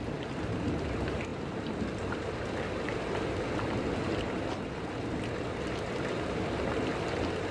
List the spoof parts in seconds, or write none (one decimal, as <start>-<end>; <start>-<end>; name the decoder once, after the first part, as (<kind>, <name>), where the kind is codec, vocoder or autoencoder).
none